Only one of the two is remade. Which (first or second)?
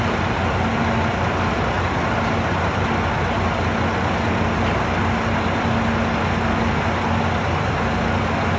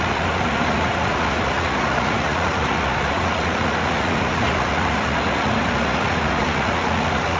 second